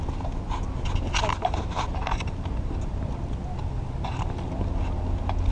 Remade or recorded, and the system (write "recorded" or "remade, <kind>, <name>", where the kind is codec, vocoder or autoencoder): recorded